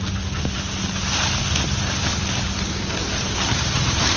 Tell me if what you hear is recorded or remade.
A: recorded